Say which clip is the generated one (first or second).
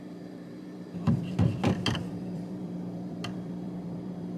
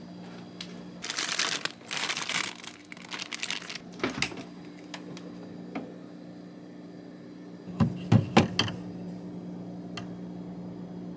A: first